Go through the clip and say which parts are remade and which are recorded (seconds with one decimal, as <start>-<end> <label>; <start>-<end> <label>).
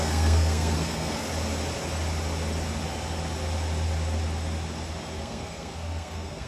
0.0-1.3 remade; 1.3-5.2 recorded; 5.2-6.5 remade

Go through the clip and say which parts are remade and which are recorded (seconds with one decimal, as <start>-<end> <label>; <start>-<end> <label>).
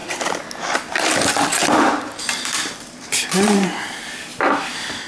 0.0-1.6 recorded; 1.6-4.3 remade; 4.3-5.1 recorded